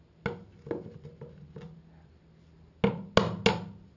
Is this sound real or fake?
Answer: real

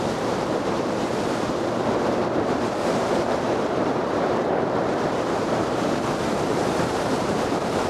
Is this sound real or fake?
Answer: fake